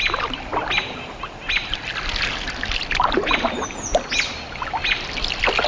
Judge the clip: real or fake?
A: real